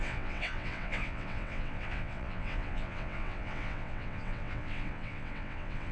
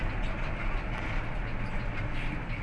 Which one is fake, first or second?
first